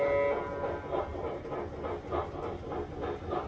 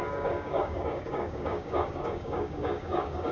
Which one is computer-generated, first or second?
second